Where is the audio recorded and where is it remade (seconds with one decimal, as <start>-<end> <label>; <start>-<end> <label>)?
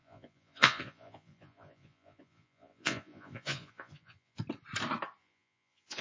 0.0-4.4 remade; 4.4-5.2 recorded; 5.2-6.0 remade